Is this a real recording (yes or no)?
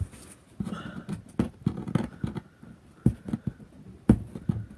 yes